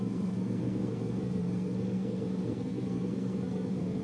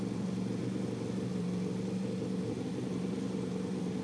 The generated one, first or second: first